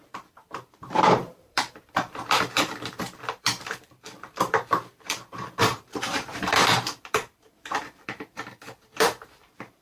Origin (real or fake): fake